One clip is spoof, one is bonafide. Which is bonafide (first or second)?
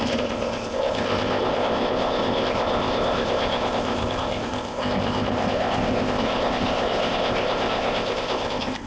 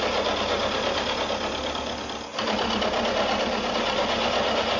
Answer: second